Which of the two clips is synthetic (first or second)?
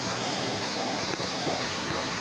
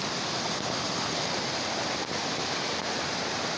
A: first